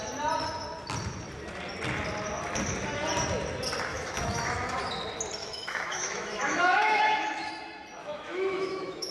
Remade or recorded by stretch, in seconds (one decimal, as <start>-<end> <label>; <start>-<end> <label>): 0.0-3.9 recorded; 3.9-4.8 remade; 4.8-5.4 recorded; 5.4-7.5 remade; 7.5-8.0 recorded; 8.0-9.1 remade